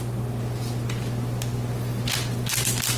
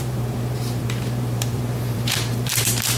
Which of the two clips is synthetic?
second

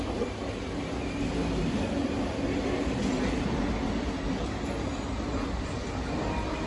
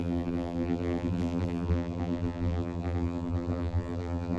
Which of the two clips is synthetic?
second